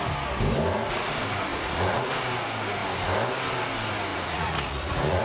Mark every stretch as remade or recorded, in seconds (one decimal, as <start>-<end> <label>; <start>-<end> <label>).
0.0-1.5 recorded; 1.5-2.1 remade; 2.1-4.1 recorded; 4.1-5.2 remade